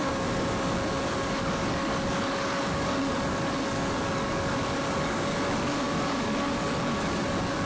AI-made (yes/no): yes